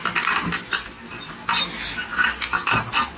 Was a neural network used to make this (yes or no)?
no